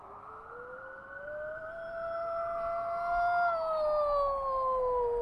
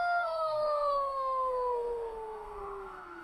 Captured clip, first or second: first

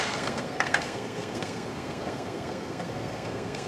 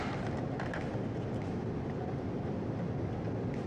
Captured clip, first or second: second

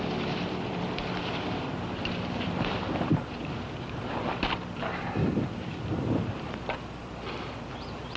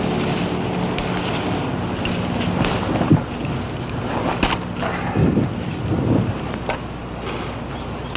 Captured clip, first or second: second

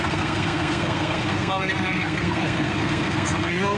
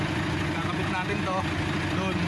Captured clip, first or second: second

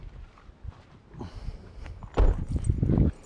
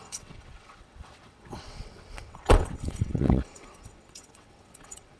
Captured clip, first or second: first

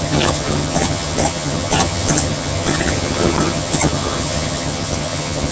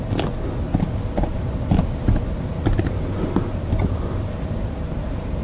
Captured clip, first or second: second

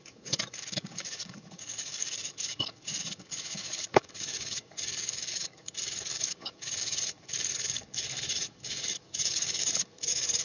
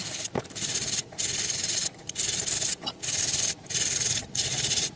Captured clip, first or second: second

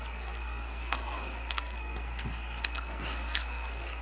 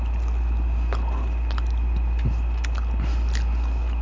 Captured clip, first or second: second